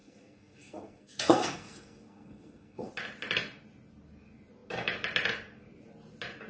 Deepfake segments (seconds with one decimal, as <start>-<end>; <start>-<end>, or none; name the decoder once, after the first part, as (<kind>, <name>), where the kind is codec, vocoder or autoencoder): 0.0-2.9 (codec, SNAC)